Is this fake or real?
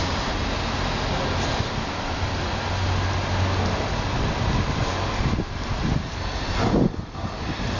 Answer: real